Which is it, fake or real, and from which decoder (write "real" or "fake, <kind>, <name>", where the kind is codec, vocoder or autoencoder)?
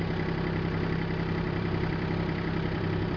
fake, vocoder, BigVGAN v2